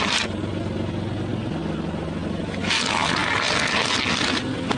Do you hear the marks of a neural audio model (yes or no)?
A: no